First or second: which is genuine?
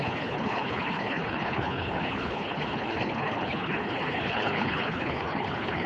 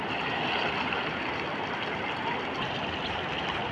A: second